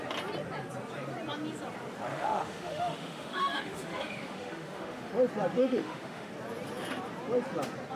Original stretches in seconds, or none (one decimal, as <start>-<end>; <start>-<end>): 0.0-2.1; 5.1-5.6; 6.3-8.0